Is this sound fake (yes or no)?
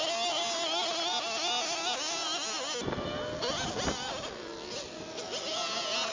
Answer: no